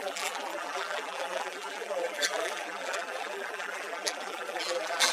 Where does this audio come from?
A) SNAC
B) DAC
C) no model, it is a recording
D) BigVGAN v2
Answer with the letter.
D